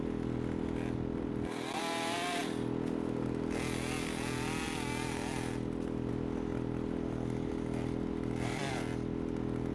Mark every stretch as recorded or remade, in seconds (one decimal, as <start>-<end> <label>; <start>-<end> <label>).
0.0-9.7 recorded